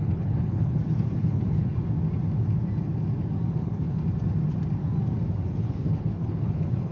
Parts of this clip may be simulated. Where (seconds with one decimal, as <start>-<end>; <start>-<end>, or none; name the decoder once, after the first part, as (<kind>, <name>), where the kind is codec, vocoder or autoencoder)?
0.0-1.8 (codec, HILCodec); 3.5-4.0; 5.4-6.9